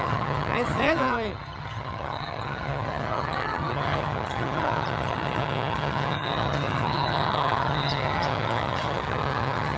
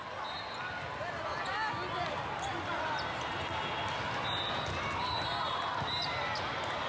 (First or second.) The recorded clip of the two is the second